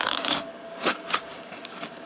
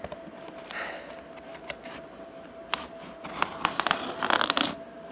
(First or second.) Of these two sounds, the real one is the second